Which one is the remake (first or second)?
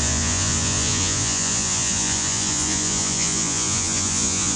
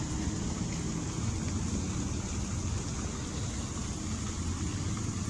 first